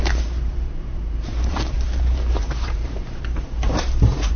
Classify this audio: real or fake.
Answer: fake